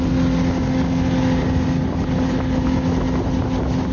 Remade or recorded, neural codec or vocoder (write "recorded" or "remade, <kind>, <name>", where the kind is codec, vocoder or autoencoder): recorded